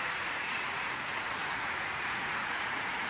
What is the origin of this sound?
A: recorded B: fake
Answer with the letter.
B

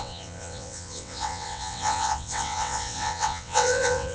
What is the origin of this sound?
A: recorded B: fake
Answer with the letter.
B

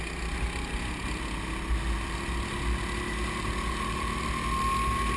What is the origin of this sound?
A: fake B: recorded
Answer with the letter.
B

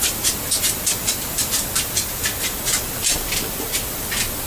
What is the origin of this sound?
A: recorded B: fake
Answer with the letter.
A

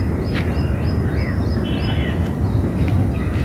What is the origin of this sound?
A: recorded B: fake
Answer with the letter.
A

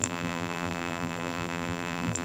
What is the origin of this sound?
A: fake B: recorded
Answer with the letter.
A